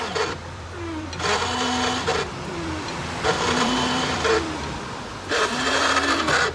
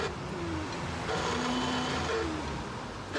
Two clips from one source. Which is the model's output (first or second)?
first